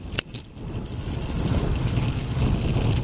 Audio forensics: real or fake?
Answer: real